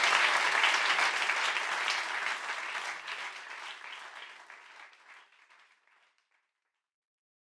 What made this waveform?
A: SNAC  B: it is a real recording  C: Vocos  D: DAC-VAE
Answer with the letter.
B